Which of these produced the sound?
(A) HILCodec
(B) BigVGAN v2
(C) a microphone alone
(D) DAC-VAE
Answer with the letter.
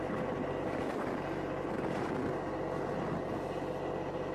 C